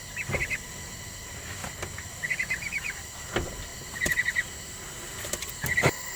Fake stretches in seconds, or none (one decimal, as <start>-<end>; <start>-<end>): none